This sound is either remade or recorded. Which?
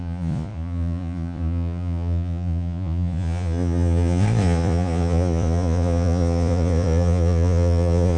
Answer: remade